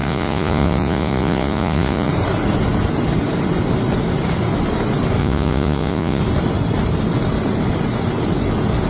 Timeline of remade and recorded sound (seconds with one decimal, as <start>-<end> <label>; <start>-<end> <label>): 0.0-2.1 remade; 2.1-5.2 recorded; 5.2-6.2 remade; 6.2-8.9 recorded